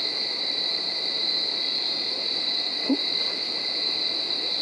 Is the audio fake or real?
real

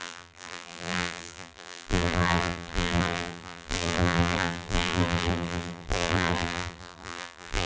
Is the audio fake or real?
fake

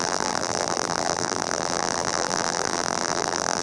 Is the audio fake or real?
fake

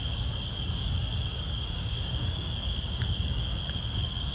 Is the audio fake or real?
fake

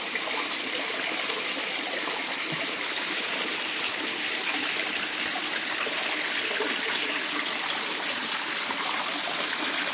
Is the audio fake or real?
real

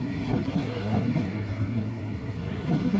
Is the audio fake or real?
fake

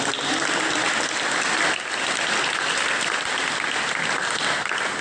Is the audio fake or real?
real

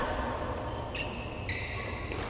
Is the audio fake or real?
real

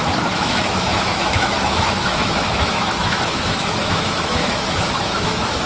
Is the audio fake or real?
fake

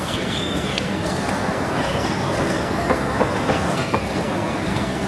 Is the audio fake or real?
fake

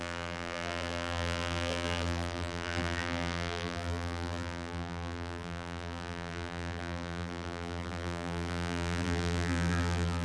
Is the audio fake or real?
fake